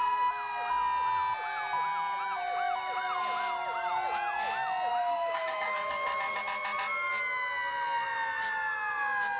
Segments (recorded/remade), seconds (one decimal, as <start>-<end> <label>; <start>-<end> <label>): 0.0-4.9 recorded; 4.9-6.4 remade; 6.4-9.4 recorded